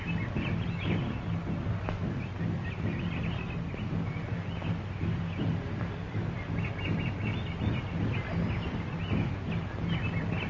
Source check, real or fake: real